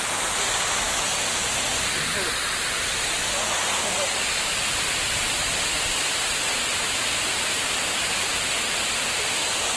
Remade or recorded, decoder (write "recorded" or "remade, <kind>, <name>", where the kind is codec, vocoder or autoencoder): recorded